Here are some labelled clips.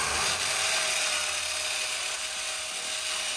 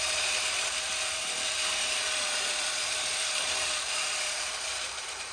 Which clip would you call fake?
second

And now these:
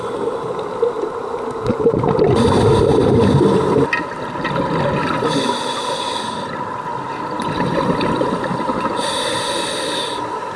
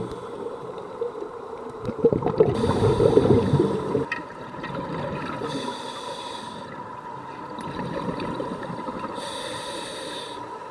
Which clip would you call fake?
second